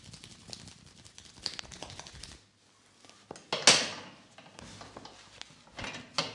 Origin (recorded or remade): recorded